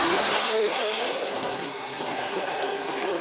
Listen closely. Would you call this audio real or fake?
fake